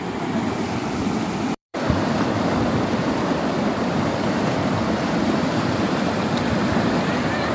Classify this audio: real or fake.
fake